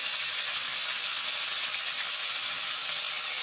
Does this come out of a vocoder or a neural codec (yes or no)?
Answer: yes